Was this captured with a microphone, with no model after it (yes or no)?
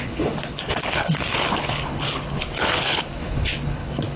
no